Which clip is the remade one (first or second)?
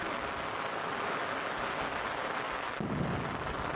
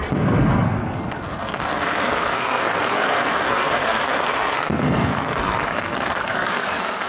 second